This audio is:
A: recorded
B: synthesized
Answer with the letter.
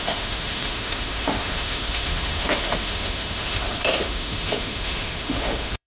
B